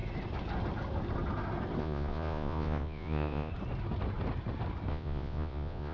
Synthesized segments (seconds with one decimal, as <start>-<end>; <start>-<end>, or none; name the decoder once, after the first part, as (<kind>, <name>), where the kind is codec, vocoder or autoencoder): 1.8-3.5 (vocoder, Vocos); 4.9-5.9